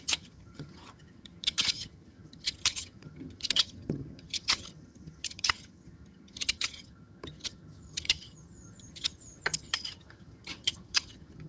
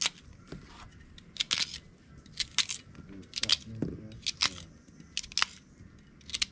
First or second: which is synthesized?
first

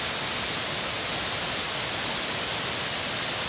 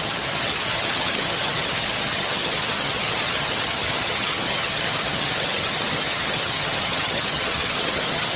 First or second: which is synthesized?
second